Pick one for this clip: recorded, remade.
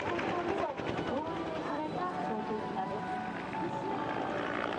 recorded